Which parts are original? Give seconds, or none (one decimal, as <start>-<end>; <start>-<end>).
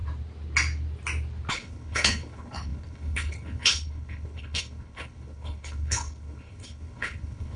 0.0-1.5